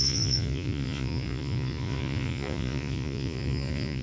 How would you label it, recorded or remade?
remade